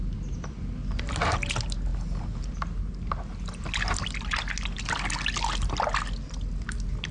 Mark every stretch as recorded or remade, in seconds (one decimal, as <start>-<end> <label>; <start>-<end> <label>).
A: 0.0-7.1 recorded

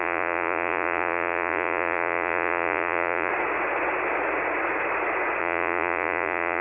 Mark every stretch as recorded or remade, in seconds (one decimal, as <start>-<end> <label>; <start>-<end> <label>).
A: 0.0-3.3 remade; 3.3-5.4 recorded; 5.4-6.6 remade

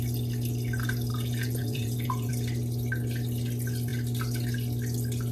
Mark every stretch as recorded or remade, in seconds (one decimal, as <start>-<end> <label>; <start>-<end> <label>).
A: 0.0-1.1 recorded; 1.1-2.3 remade; 2.3-5.3 recorded

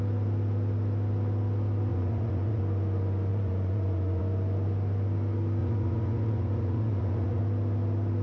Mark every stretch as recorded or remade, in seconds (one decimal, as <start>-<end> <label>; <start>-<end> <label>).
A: 0.0-1.9 recorded; 1.9-2.6 remade; 2.6-3.3 recorded; 3.3-4.2 remade; 4.2-5.6 recorded; 5.6-7.4 remade; 7.4-8.2 recorded

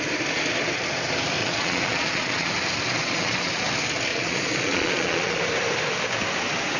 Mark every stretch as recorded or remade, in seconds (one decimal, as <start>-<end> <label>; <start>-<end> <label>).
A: 0.0-1.4 recorded; 1.4-2.5 remade; 2.5-3.0 recorded; 3.0-3.5 remade; 3.5-4.1 recorded; 4.1-5.4 remade; 5.4-6.8 recorded